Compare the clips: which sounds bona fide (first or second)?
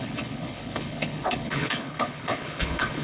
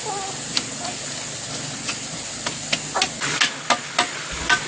second